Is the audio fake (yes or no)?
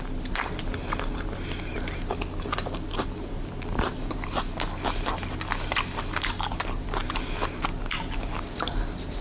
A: no